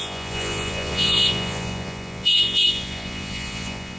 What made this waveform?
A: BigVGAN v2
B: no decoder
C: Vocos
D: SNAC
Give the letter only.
C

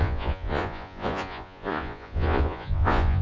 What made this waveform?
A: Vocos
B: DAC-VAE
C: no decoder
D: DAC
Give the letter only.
A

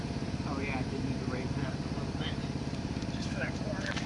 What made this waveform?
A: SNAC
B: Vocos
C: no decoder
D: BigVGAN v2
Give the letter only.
D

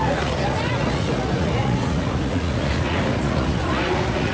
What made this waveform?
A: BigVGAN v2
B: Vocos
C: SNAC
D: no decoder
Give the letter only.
B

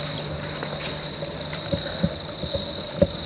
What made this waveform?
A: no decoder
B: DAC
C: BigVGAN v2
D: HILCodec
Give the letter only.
A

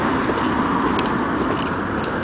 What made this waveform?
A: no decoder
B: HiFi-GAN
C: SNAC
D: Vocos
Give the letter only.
A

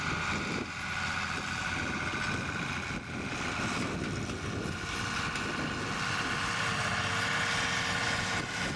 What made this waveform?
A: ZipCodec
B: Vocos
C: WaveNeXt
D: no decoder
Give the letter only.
D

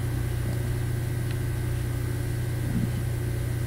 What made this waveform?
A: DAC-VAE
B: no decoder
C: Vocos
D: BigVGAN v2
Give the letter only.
B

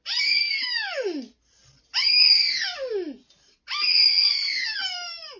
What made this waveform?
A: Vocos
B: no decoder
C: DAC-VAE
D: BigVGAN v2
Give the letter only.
B